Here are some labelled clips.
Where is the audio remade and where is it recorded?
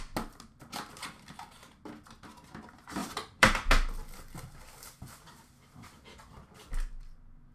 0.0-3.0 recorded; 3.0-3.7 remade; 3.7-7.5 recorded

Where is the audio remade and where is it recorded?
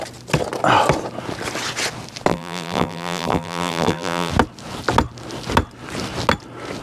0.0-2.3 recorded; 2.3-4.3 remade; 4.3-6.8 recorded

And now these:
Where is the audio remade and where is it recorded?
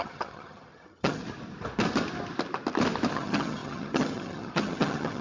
0.0-1.2 remade; 1.2-3.1 recorded; 3.1-5.2 remade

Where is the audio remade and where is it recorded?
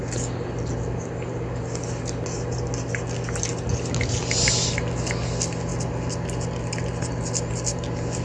0.0-8.2 recorded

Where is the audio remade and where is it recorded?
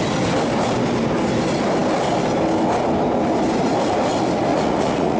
0.0-4.5 recorded; 4.5-5.2 remade